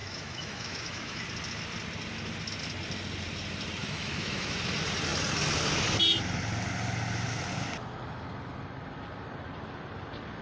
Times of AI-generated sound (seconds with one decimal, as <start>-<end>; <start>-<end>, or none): 0.0-1.2; 3.8-4.6